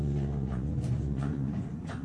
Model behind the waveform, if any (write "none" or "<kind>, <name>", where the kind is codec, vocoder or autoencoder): vocoder, Vocos